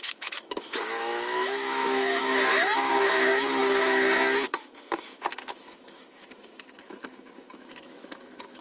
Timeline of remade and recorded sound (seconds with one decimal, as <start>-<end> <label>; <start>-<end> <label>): 0.0-8.6 remade

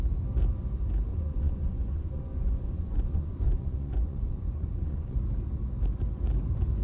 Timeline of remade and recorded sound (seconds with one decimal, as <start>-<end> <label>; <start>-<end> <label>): 0.0-1.1 recorded; 1.1-5.2 remade; 5.2-6.8 recorded